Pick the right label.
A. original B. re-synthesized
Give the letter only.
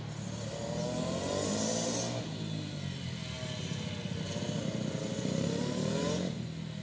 A